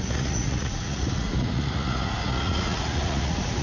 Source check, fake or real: fake